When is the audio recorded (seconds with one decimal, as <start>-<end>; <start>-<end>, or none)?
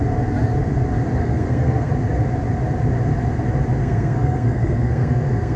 0.0-1.2; 1.9-3.8